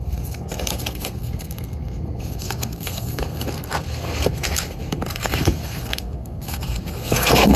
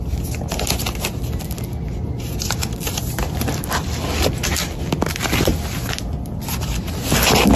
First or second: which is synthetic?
first